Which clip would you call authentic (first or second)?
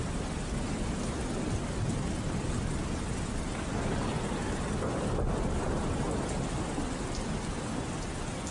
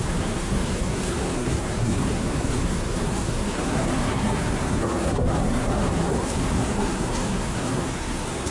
first